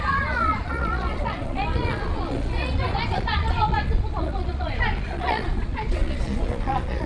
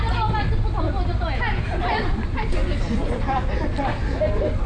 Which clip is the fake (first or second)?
first